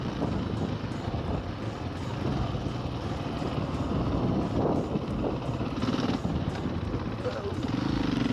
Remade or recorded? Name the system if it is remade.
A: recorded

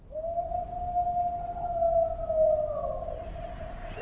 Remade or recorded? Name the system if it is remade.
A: recorded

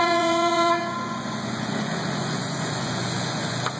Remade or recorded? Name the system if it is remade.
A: remade, vocoder, Vocos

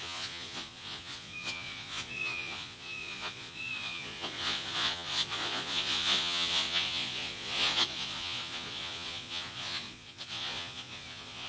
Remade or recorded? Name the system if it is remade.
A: remade, vocoder, Vocos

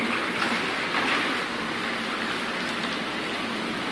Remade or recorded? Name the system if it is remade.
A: recorded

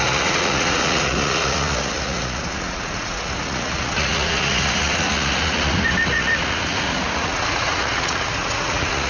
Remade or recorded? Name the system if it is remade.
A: remade, vocoder, Vocos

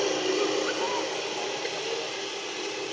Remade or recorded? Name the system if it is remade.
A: recorded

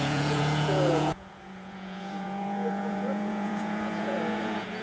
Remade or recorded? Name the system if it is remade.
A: remade, vocoder, Vocos